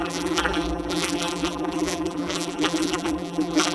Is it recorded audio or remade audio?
remade